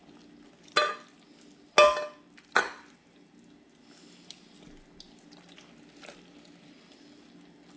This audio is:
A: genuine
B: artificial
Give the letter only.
A